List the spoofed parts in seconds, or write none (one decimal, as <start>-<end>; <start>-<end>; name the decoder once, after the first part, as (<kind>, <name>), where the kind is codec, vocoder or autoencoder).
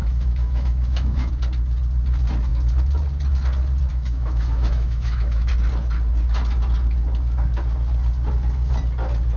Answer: 0.0-1.3 (autoencoder, DAC-VAE); 3.9-5.5